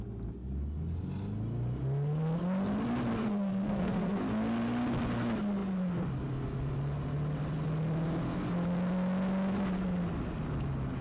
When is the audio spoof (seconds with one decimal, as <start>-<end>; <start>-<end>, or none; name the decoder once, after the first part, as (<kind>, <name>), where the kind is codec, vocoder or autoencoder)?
3.2-4.2 (codec, SNAC)